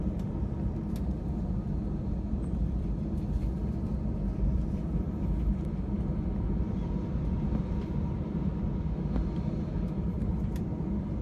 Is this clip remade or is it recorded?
recorded